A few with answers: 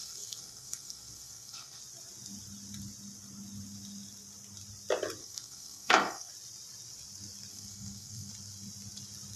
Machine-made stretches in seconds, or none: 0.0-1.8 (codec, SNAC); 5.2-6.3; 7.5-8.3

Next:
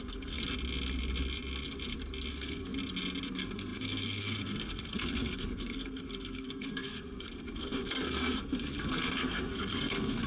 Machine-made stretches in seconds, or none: 0.0-0.4 (codec, SNAC); 2.3-2.7; 3.3-10.3

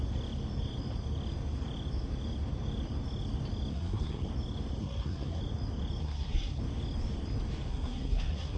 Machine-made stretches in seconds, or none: 3.7-4.3 (codec, SNAC); 4.8-5.4; 6.0-6.6; 7.7-8.6